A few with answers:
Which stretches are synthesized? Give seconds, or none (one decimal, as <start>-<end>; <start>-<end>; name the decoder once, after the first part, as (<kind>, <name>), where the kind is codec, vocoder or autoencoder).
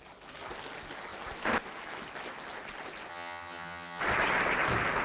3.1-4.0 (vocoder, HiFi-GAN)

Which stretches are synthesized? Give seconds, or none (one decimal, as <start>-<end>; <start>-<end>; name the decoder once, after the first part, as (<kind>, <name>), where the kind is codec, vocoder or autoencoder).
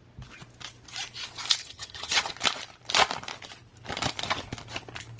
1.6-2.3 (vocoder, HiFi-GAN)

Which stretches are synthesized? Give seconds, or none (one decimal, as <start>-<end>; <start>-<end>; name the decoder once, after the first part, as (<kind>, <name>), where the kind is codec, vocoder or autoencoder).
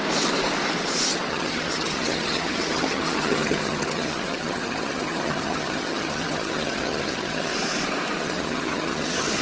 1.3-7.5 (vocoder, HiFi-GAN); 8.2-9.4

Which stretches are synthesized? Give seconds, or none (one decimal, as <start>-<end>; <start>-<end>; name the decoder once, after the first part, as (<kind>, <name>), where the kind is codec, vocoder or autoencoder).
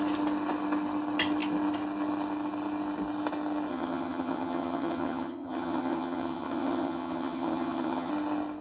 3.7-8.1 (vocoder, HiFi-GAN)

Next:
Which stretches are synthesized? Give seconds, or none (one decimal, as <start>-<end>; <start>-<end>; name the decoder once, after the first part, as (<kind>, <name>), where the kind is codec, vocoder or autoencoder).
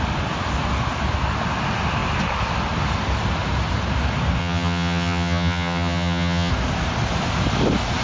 4.4-6.5 (vocoder, HiFi-GAN)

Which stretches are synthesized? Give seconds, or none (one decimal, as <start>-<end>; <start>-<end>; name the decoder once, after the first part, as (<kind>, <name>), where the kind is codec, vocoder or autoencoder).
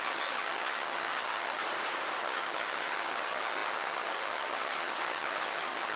0.0-1.6 (vocoder, HiFi-GAN); 2.2-6.0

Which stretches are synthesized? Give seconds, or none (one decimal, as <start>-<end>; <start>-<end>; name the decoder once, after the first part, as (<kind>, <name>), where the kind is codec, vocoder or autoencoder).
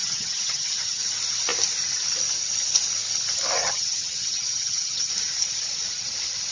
0.0-1.1 (vocoder, HiFi-GAN); 3.6-5.1